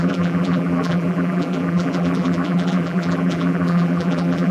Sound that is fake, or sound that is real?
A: fake